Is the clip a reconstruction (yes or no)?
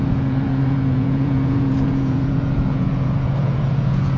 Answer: yes